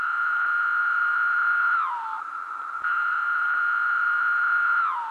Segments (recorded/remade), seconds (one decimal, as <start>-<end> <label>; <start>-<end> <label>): 0.0-0.8 recorded; 0.8-3.9 remade; 3.9-5.1 recorded